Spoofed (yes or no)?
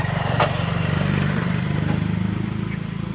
yes